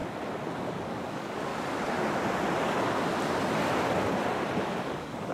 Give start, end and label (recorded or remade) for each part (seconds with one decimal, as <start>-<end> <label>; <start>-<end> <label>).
0.0-0.6 recorded; 0.6-1.5 remade; 1.5-4.7 recorded; 4.7-5.3 remade